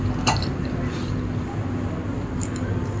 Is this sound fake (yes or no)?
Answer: no